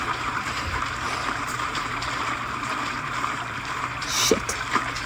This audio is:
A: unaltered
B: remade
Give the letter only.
B